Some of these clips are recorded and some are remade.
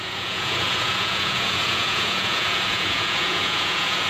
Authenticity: remade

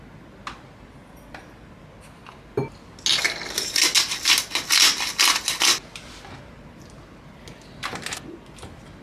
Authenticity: recorded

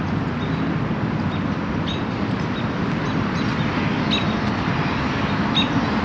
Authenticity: recorded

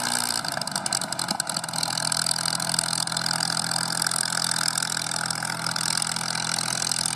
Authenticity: recorded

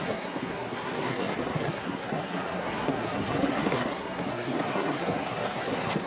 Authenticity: remade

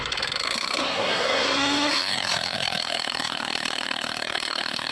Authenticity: remade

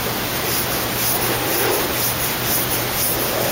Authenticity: recorded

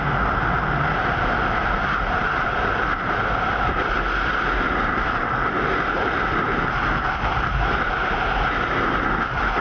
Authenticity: recorded